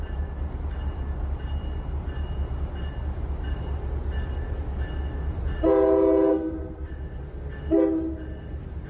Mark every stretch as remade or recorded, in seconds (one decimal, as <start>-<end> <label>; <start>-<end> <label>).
0.0-6.3 recorded; 6.3-6.9 remade; 6.9-8.9 recorded